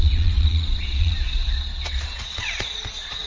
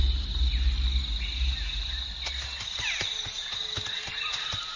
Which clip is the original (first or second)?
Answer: second